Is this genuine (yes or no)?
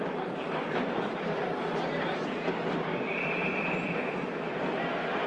no